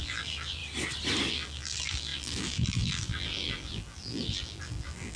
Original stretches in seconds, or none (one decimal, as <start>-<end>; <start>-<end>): 0.6-1.3